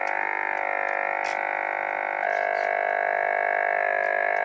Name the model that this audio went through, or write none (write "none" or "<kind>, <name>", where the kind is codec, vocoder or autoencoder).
none